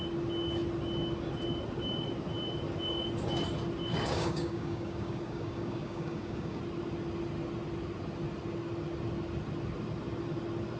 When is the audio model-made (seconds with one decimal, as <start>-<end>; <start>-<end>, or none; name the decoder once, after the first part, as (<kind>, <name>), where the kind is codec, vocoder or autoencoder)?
3.9-6.6 (codec, DAC)